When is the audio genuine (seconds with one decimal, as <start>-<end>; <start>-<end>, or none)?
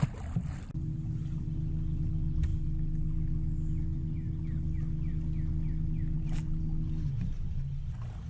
0.0-8.3